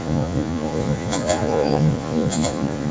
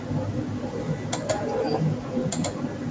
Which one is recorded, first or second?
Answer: second